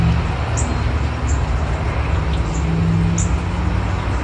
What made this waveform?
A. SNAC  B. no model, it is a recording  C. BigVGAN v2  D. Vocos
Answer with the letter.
B